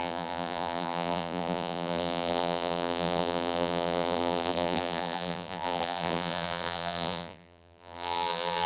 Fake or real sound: fake